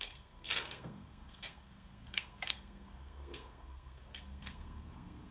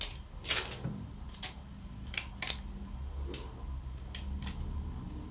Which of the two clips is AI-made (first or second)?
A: first